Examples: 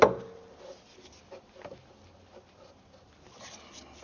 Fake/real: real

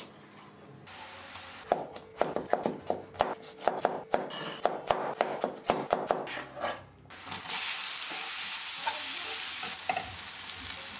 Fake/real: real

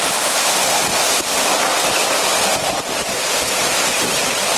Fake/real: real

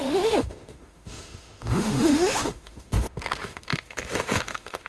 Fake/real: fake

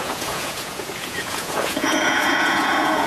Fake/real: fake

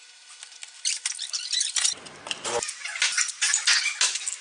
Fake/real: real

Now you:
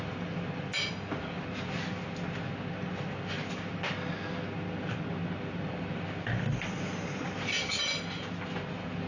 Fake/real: real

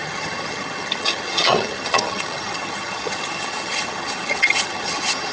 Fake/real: fake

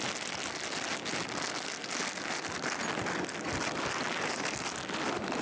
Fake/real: real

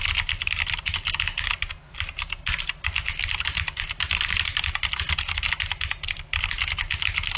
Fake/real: real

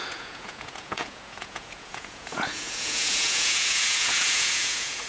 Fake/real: fake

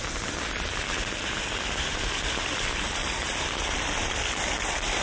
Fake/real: real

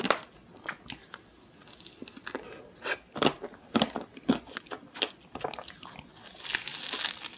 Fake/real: real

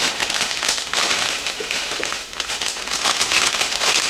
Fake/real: fake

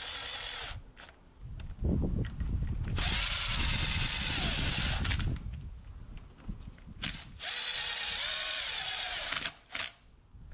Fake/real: real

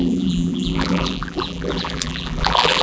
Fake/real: fake